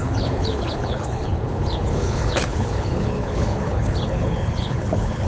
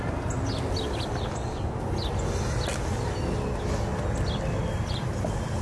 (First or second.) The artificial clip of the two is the first